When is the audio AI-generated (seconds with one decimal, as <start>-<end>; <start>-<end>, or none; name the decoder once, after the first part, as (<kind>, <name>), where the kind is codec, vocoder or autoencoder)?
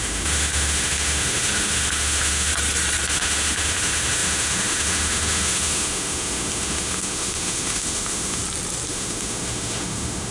0.0-2.5 (autoencoder, DAC-VAE); 3.1-8.4; 8.9-10.3